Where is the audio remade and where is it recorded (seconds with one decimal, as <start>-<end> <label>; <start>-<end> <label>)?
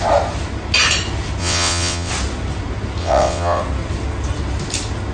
0.0-1.4 recorded; 1.4-2.1 remade; 2.1-3.0 recorded; 3.0-3.6 remade; 3.6-5.1 recorded